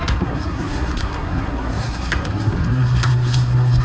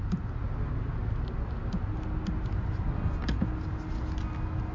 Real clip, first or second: second